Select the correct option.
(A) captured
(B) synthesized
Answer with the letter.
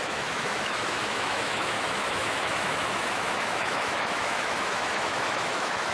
B